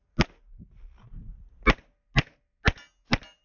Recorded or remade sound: recorded